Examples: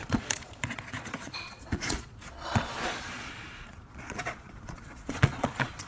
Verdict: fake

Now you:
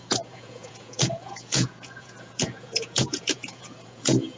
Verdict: fake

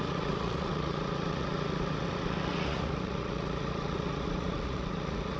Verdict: fake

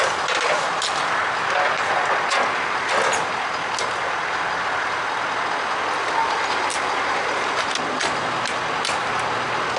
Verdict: real